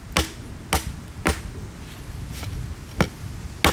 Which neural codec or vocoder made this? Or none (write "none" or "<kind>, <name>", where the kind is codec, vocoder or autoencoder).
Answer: none